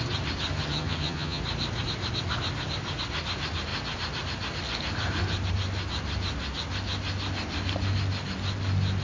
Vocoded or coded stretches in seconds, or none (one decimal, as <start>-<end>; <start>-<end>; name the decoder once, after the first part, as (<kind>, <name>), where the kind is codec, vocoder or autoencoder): 0.5-1.4 (vocoder, HiFi-GAN)